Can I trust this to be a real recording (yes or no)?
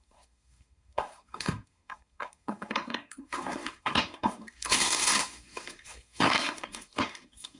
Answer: no